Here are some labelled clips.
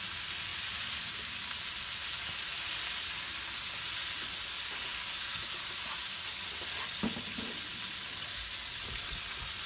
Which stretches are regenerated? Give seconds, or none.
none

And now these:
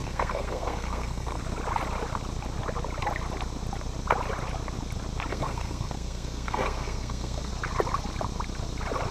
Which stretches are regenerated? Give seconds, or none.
0.0-1.4 (codec, SNAC); 5.3-7.5

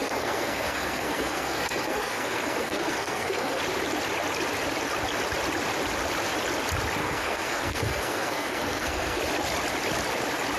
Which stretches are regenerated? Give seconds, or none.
0.0-3.6 (codec, SNAC); 7.0-9.2

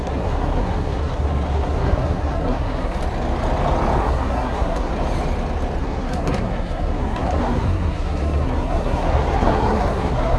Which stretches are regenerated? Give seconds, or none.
0.0-3.0 (codec, SNAC); 4.0-4.9; 5.8-10.4